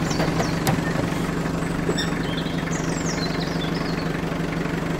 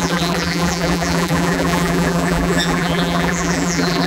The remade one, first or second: second